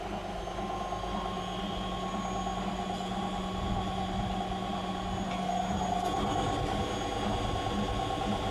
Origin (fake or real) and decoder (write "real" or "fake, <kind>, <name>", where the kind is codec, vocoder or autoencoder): real